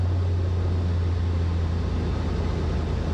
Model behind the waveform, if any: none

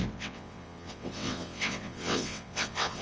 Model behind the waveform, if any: vocoder, WaveNeXt